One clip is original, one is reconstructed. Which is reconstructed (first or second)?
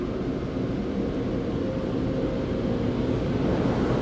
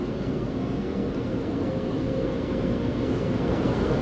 second